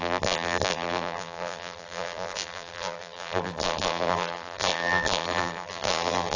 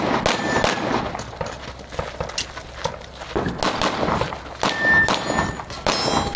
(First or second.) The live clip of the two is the second